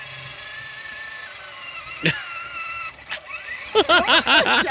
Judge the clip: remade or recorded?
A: recorded